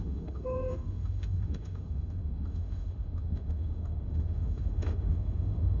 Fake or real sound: fake